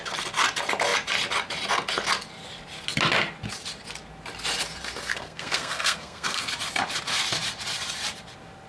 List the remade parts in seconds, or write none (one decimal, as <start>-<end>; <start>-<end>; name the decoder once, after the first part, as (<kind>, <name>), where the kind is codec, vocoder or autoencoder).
5.1-6.5 (codec, SNAC)